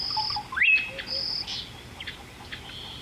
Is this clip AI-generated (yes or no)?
no